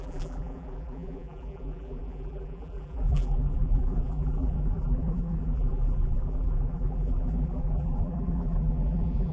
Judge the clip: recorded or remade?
remade